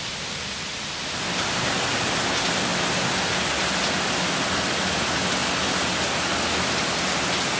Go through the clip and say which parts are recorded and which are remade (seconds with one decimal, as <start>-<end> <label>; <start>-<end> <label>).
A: 0.0-2.7 remade; 2.7-3.8 recorded; 3.8-5.4 remade; 5.4-7.6 recorded